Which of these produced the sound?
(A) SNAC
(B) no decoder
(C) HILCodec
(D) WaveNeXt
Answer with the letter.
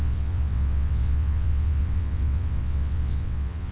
D